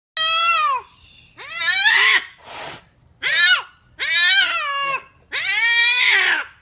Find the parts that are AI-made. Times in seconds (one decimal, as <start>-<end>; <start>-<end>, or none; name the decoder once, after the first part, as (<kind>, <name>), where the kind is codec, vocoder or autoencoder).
1.8-3.7 (vocoder, BigVGAN v2); 5.8-6.6

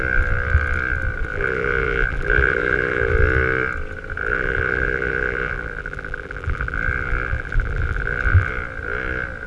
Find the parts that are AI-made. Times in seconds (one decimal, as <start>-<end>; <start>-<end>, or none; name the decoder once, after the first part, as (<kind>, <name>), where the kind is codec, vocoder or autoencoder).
1.3-3.1 (vocoder, BigVGAN v2); 4.2-8.5

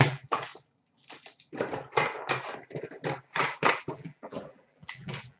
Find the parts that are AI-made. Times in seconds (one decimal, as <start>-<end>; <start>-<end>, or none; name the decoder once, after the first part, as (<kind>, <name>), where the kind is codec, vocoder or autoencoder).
0.0-0.5 (vocoder, BigVGAN v2); 3.7-5.4